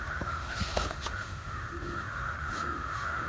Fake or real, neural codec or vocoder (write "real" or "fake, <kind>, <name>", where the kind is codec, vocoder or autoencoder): fake, autoencoder, DAC-VAE